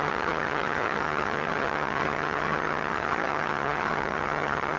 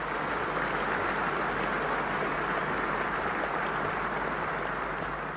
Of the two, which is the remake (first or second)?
first